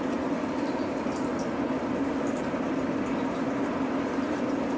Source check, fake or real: real